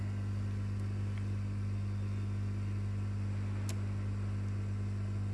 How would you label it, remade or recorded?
recorded